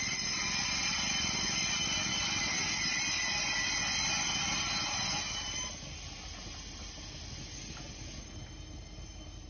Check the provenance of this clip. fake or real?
real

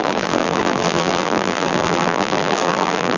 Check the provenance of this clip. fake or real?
fake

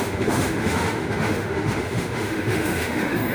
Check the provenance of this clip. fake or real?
fake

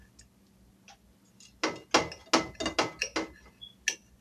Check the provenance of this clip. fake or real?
real